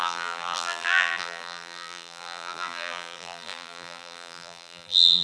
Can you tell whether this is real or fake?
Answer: fake